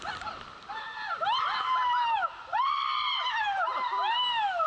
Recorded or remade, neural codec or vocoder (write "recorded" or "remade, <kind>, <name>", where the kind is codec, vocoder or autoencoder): recorded